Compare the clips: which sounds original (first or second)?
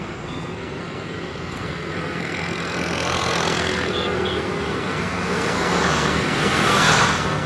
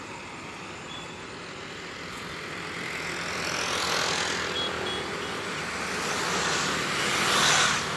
second